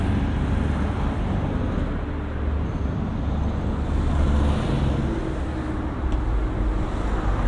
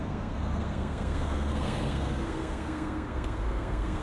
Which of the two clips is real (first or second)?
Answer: first